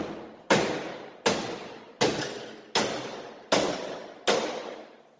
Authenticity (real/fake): real